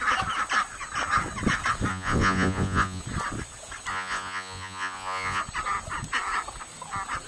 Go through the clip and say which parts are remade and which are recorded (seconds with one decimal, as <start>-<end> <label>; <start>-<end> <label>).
0.0-1.9 recorded; 1.9-3.0 remade; 3.0-3.9 recorded; 3.9-5.4 remade; 5.4-7.3 recorded